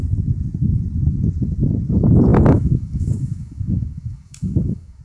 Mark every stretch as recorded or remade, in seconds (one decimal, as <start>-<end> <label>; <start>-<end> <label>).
0.0-2.3 recorded; 2.3-5.0 remade